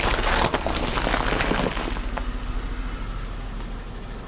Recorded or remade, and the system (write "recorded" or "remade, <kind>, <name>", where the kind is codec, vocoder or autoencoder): recorded